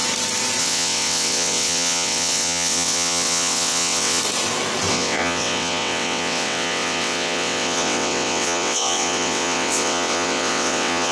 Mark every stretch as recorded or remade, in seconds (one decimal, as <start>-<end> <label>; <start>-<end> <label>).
0.0-0.6 recorded; 0.6-4.2 remade; 4.2-4.9 recorded; 4.9-11.1 remade